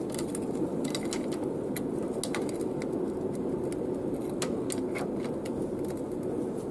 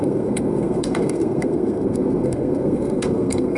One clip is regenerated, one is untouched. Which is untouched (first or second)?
first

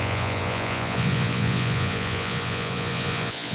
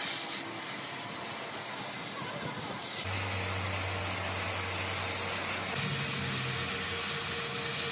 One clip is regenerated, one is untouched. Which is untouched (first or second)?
second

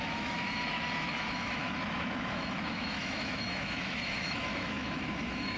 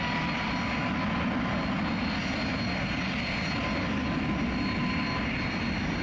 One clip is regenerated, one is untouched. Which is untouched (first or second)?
second